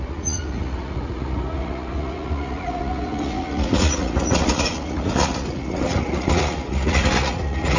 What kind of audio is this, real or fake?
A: fake